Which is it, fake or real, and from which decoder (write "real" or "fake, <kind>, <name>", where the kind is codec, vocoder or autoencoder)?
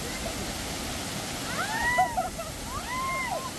real